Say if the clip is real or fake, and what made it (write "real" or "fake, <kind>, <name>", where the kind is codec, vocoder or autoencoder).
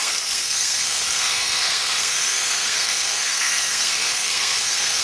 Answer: fake, codec, SNAC